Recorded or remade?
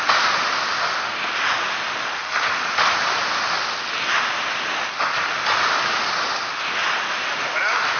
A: recorded